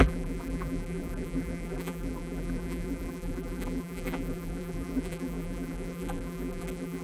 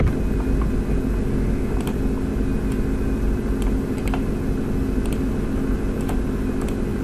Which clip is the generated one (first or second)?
first